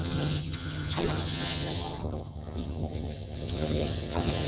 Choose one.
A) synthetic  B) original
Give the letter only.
A